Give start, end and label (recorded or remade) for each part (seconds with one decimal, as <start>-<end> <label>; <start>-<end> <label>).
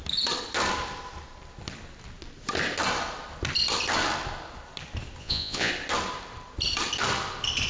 0.0-5.2 recorded; 5.2-5.7 remade; 5.7-7.7 recorded